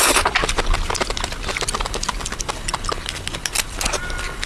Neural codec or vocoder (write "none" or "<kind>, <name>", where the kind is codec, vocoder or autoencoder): none